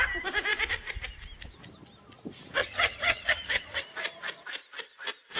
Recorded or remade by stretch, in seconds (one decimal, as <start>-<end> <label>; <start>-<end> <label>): 0.0-2.6 recorded; 2.6-3.8 remade; 3.8-5.4 recorded